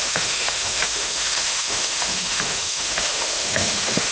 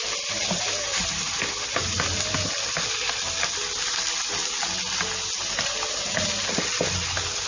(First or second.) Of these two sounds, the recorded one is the second